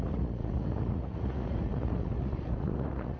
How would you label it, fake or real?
fake